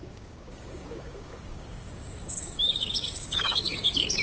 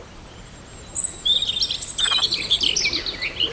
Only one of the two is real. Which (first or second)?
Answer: second